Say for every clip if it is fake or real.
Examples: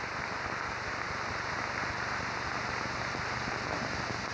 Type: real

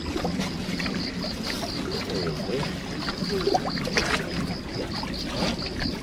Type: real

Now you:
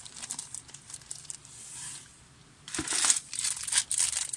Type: real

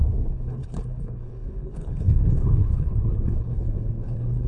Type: fake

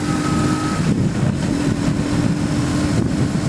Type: real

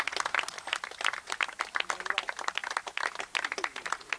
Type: real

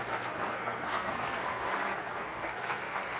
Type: fake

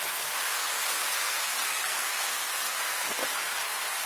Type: fake